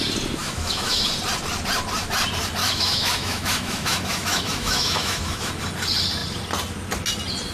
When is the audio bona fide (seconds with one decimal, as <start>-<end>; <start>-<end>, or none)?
0.0-0.4; 1.1-2.6; 5.5-7.5